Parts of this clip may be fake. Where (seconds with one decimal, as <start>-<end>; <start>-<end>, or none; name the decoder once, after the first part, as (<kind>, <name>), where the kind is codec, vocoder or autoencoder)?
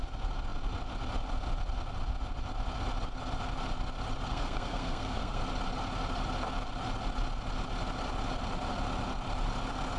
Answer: 4.3-5.4 (codec, SNAC)